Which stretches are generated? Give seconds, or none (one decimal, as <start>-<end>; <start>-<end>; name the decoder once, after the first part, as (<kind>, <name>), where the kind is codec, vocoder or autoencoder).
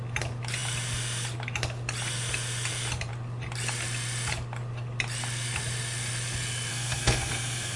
6.7-7.8 (codec, SNAC)